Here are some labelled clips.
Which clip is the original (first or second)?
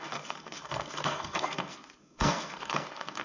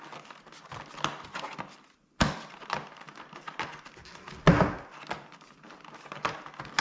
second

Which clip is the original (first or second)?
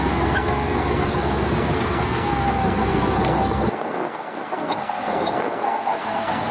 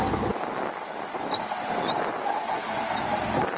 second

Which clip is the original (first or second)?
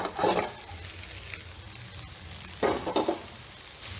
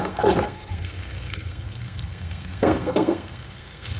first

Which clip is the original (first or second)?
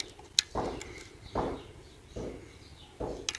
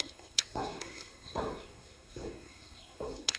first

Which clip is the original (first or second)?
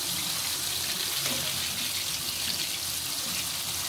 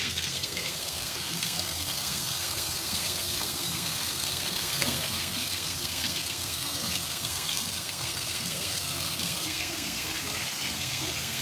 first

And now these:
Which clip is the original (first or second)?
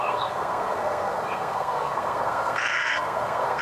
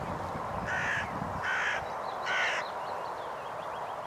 second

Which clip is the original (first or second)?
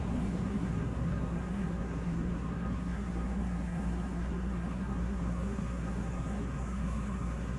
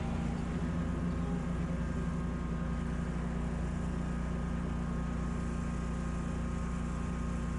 second